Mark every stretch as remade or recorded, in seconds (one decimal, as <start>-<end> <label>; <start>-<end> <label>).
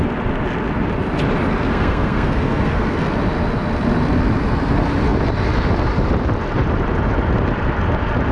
0.0-1.7 recorded; 1.7-3.0 remade; 3.0-8.3 recorded